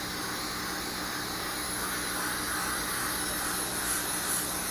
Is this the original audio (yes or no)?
yes